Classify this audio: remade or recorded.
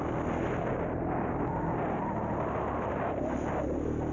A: recorded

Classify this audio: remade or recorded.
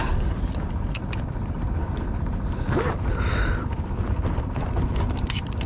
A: recorded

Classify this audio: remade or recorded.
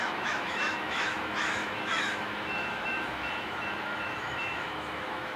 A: remade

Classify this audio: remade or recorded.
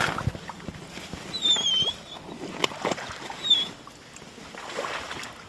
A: recorded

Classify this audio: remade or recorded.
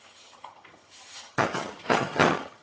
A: remade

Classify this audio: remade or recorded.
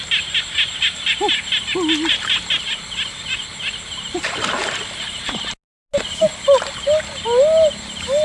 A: recorded